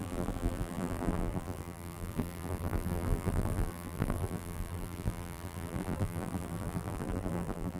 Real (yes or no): no